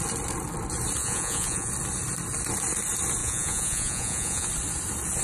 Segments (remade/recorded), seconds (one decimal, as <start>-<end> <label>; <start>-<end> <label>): 0.0-1.0 recorded; 1.0-1.7 remade; 1.7-3.2 recorded; 3.2-4.5 remade; 4.5-5.2 recorded